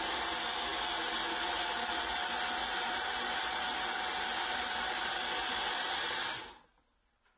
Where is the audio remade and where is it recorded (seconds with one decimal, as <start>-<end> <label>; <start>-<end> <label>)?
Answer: 0.0-5.5 recorded; 5.5-6.6 remade; 6.6-7.4 recorded